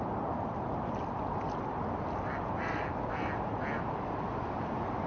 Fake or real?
real